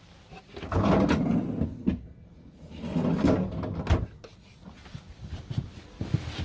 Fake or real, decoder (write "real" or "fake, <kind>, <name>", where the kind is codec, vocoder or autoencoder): real